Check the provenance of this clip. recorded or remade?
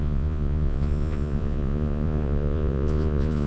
remade